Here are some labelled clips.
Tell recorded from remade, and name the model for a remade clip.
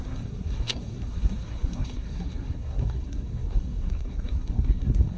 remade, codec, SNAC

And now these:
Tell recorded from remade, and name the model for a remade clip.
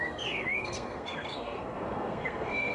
remade, codec, SNAC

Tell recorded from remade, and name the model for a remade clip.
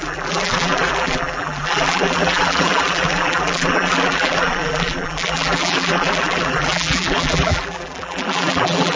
remade, vocoder, BigVGAN v2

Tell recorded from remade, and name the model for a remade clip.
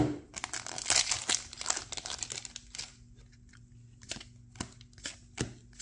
recorded